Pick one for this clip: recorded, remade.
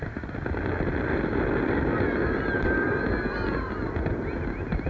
recorded